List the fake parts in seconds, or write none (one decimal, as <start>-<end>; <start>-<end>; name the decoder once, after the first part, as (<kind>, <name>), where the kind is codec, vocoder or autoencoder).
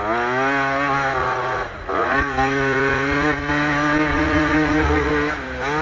1.2-3.5 (vocoder, Vocos); 4.1-5.1